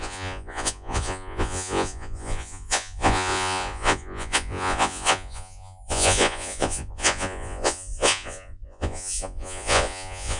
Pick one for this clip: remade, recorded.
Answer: remade